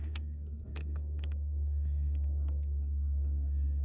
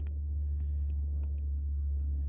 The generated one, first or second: first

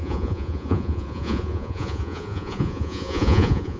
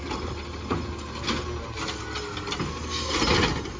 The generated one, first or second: first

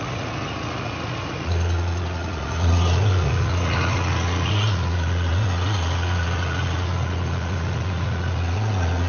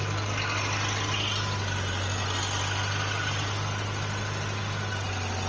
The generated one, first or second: first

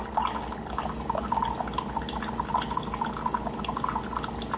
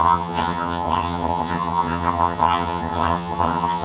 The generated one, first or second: second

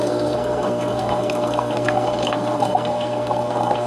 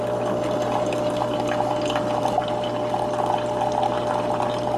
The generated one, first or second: first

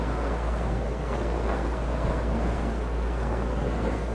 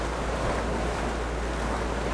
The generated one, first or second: first